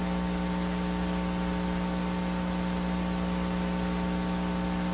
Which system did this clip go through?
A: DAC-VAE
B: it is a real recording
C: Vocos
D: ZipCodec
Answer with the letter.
B